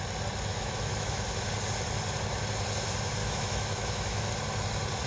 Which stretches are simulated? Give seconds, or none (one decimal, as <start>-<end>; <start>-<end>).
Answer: 0.5-1.5; 3.2-4.3